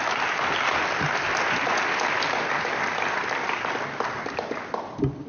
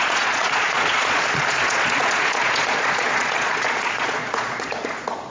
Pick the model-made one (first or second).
second